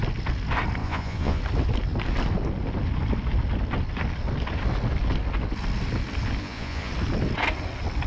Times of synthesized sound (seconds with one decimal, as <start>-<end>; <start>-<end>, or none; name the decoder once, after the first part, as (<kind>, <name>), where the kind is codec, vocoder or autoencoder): 0.8-1.4 (vocoder, Vocos); 6.4-6.9

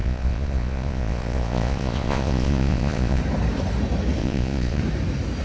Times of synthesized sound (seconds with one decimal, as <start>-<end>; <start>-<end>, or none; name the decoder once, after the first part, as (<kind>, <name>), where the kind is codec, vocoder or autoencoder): 0.0-3.2 (vocoder, Vocos); 4.2-4.8